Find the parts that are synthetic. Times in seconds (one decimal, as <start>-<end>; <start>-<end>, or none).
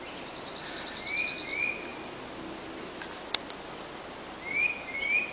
none